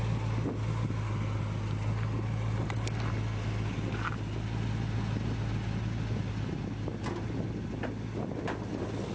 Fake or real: real